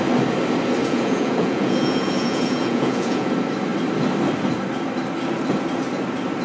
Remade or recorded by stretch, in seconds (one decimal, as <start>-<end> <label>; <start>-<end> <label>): 0.0-0.8 recorded; 0.8-3.3 remade; 3.3-6.4 recorded